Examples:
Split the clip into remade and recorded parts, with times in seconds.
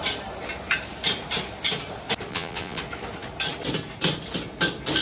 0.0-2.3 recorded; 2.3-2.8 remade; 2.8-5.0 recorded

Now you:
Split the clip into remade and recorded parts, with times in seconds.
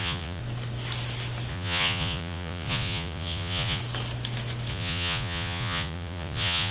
0.0-0.4 remade; 0.4-1.5 recorded; 1.5-3.8 remade; 3.8-4.7 recorded; 4.7-6.7 remade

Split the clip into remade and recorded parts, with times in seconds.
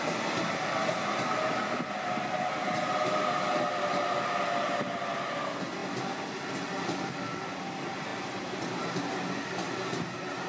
0.0-10.5 recorded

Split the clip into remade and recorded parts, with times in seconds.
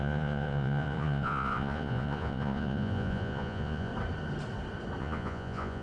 0.0-3.9 remade; 3.9-5.0 recorded; 5.0-5.8 remade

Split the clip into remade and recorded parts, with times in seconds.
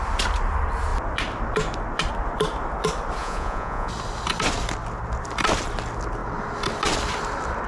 0.0-3.2 recorded; 3.2-3.9 remade; 3.9-7.7 recorded